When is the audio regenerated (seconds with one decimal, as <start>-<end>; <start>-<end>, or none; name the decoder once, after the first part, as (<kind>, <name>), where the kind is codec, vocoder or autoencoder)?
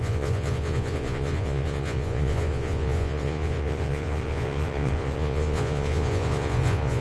0.0-7.0 (vocoder, Vocos)